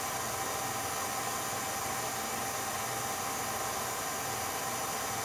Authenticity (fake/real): real